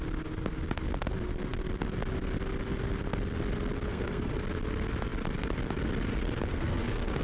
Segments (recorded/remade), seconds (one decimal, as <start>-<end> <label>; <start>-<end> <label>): 0.0-3.9 recorded; 3.9-4.4 remade; 4.4-6.5 recorded; 6.5-7.2 remade